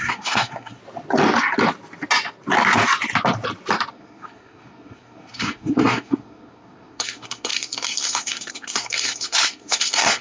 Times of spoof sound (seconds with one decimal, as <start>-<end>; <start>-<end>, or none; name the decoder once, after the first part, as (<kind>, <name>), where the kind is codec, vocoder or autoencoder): 0.0-0.8 (codec, SNAC); 3.9-10.2